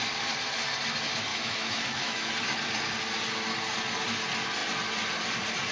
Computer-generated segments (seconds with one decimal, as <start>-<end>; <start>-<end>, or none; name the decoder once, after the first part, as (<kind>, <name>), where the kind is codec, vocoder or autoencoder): 1.3-2.3 (autoencoder, DAC-VAE)